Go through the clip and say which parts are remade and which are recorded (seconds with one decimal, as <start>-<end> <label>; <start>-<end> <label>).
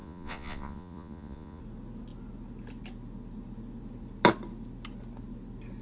0.0-1.6 remade; 1.6-5.8 recorded